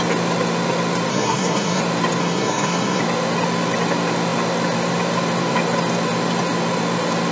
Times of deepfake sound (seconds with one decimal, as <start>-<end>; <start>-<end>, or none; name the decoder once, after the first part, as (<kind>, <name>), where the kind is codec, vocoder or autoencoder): 1.1-1.8 (codec, SNAC); 2.2-3.0